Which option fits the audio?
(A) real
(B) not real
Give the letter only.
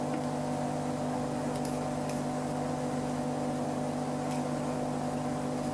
A